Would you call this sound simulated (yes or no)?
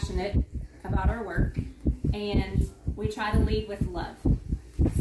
no